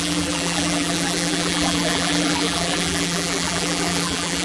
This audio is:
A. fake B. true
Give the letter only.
A